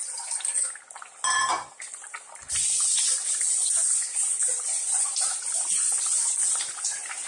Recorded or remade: recorded